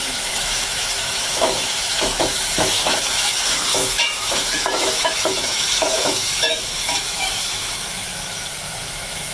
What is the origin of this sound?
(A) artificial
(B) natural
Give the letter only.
A